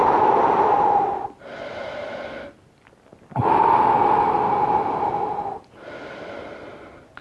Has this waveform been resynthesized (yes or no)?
no